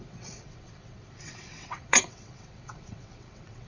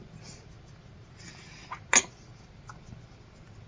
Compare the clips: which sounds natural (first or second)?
second